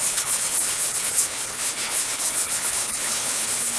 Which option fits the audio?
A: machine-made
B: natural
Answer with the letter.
A